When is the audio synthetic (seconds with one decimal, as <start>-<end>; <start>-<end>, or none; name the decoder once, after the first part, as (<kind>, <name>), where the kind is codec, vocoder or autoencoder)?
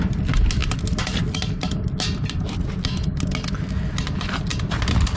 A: none